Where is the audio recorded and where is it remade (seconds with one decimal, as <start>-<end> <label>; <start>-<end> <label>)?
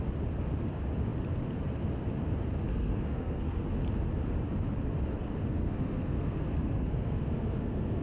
0.0-2.7 recorded; 2.7-3.7 remade; 3.7-5.5 recorded; 5.5-8.0 remade